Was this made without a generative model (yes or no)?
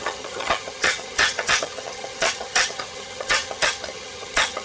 no